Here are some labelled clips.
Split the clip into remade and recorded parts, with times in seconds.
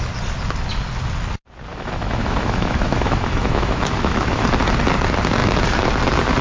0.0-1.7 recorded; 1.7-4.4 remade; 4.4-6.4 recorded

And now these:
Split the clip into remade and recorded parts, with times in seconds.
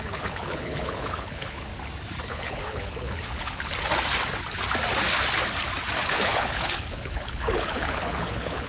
0.0-1.7 remade; 1.7-2.3 recorded; 2.3-3.7 remade; 3.7-6.1 recorded; 6.1-8.7 remade